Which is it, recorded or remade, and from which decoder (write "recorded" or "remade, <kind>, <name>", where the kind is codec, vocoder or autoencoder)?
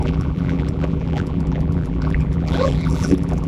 remade, vocoder, BigVGAN v2